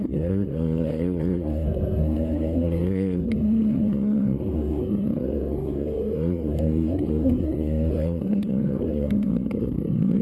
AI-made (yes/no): yes